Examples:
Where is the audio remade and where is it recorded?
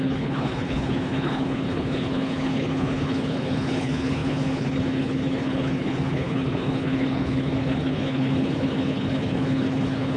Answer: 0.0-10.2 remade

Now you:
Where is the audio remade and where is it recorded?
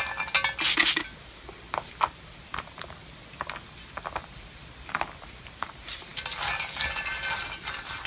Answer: 0.0-8.1 recorded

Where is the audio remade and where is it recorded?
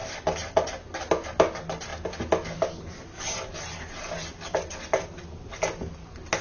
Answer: 0.0-6.4 recorded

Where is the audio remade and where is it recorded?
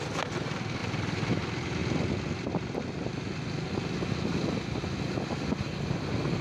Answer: 0.0-0.8 recorded; 0.8-1.4 remade; 1.4-6.4 recorded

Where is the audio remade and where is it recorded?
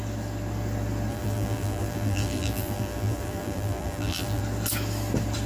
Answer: 0.0-1.1 recorded; 1.1-4.4 remade; 4.4-5.5 recorded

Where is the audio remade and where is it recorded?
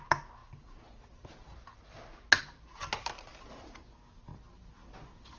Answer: 0.0-5.4 recorded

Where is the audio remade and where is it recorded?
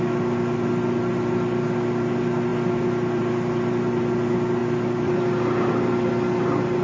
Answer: 0.0-6.8 recorded